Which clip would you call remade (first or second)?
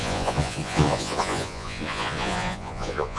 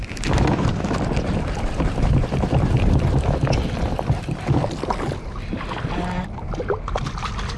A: first